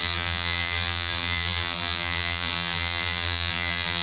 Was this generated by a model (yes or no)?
yes